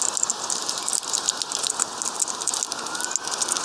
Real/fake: real